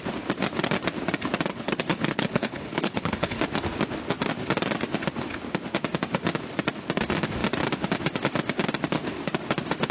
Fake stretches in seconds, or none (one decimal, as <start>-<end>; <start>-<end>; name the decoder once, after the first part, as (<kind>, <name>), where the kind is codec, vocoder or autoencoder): 1.5-3.4 (codec, HILCodec)